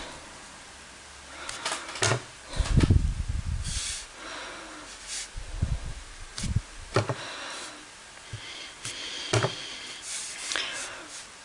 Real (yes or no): yes